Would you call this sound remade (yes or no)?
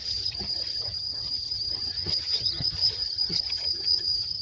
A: yes